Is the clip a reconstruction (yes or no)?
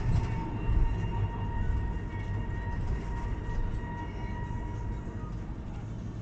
no